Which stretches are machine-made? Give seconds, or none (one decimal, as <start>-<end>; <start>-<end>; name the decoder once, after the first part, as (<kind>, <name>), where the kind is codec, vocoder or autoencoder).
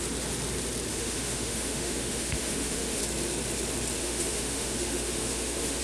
0.9-3.0 (autoencoder, DAC-VAE); 4.0-5.8